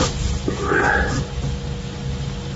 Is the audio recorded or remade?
recorded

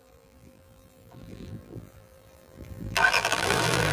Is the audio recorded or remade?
remade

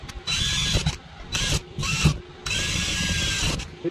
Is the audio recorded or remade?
recorded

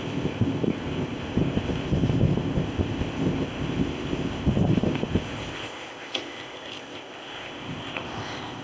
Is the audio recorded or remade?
remade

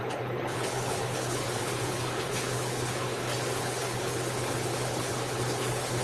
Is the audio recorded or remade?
remade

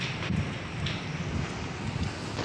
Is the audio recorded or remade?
recorded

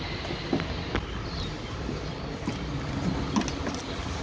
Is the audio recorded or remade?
recorded